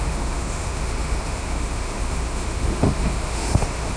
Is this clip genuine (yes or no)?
no